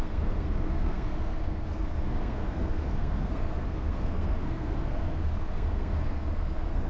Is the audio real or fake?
fake